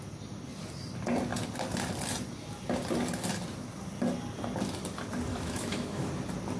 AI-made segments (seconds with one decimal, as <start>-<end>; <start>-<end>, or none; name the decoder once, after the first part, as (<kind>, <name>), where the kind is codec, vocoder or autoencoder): 5.3-6.1 (autoencoder, DAC-VAE)